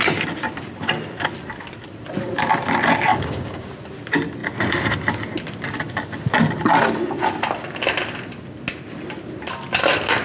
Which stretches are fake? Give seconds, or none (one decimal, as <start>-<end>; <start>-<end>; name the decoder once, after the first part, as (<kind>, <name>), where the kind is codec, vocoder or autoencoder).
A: 3.1-3.7 (codec, DAC)